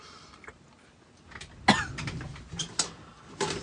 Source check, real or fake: real